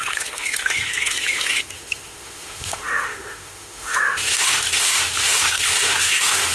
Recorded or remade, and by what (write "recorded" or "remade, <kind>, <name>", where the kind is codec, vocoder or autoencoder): remade, autoencoder, DAC-VAE